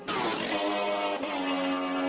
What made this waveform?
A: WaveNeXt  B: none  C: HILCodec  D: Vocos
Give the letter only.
B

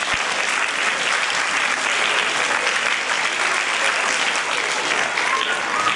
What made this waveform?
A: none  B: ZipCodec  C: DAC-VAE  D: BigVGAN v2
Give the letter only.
A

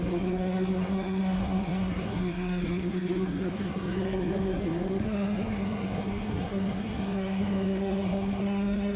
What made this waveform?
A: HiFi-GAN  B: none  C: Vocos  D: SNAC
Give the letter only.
D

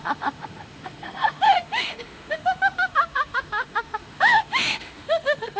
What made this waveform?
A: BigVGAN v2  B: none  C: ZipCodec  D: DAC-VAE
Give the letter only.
D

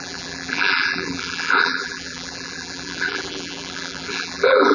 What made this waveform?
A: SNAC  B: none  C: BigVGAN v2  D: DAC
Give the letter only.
C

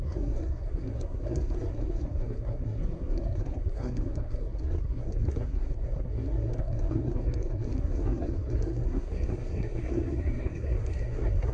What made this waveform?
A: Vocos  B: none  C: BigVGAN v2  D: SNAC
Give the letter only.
D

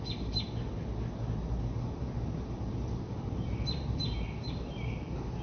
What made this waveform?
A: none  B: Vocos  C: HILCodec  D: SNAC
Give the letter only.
A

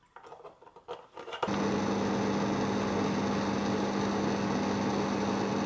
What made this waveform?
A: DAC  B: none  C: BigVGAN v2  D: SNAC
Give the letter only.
B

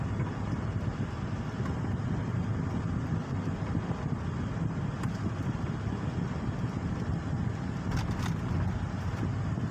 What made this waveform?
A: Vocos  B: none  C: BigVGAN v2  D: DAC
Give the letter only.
B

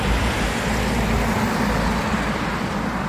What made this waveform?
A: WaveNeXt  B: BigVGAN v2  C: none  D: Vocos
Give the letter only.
B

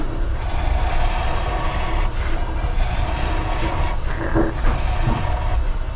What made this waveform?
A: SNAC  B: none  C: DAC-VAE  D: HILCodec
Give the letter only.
B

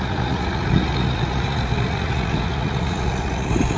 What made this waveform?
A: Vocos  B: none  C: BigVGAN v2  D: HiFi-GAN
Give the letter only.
A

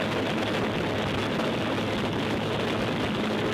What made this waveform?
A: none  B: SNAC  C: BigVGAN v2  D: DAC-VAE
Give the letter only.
A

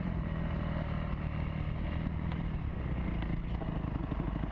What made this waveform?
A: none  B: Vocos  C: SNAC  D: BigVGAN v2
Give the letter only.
A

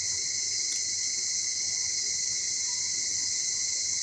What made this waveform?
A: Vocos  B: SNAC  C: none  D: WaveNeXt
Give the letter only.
C